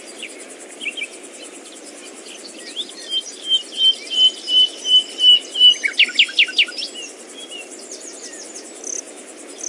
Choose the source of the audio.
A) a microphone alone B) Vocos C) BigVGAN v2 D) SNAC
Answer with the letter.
A